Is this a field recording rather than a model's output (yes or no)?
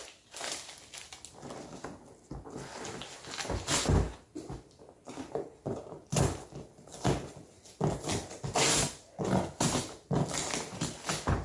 yes